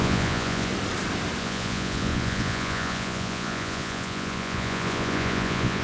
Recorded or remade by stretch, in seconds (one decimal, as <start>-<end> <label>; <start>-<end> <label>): 0.0-0.7 remade; 0.7-1.4 recorded; 1.4-5.8 remade